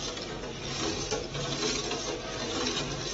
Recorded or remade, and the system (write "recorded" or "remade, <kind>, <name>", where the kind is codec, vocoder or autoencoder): recorded